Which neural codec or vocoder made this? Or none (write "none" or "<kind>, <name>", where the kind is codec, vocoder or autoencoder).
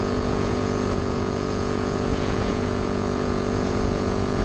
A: vocoder, Vocos